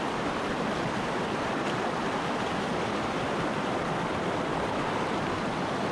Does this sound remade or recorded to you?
recorded